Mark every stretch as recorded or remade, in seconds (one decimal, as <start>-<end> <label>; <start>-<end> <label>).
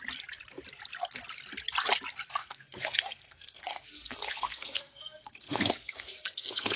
0.0-2.4 recorded; 2.4-6.8 remade